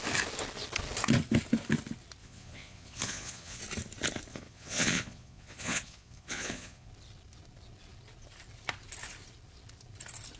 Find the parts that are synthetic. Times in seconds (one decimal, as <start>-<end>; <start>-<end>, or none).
2.2-3.6; 4.3-6.9